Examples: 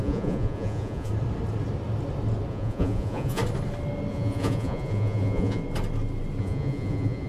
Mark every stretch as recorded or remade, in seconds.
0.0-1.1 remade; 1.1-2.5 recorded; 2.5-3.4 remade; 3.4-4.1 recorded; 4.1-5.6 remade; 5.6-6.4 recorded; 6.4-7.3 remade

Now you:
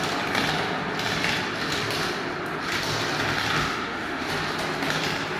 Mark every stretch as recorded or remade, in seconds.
0.0-3.6 recorded; 3.6-4.3 remade; 4.3-5.4 recorded

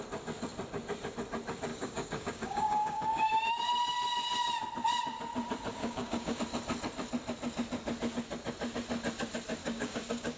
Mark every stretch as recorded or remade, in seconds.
0.0-1.7 recorded; 1.7-3.5 remade; 3.5-5.8 recorded; 5.8-6.4 remade; 6.4-9.6 recorded; 9.6-10.4 remade